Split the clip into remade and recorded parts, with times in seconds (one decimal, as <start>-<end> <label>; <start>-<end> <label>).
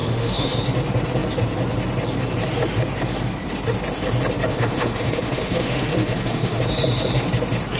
0.0-0.6 remade; 0.6-4.5 recorded; 4.5-6.6 remade; 6.6-7.8 recorded